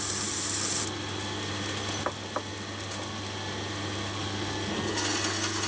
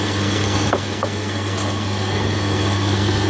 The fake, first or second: second